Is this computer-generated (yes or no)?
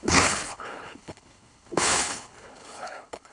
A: yes